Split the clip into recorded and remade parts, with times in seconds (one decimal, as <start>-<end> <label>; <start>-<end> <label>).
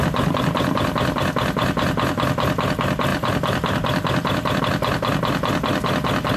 0.0-3.1 recorded; 3.1-4.6 remade; 4.6-6.4 recorded